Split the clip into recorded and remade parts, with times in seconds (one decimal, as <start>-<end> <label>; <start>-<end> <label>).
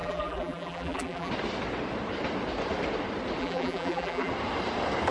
0.0-1.3 remade; 1.3-3.4 recorded; 3.4-4.3 remade; 4.3-5.1 recorded